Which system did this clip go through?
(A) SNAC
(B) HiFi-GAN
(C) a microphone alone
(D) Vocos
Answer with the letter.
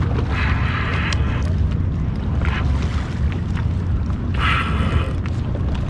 C